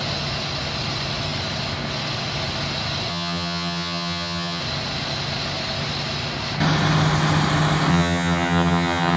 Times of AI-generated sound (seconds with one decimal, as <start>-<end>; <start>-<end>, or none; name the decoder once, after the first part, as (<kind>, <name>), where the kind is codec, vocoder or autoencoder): 3.1-4.6 (vocoder, HiFi-GAN); 7.9-9.2